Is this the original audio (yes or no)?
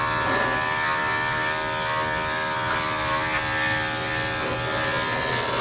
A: yes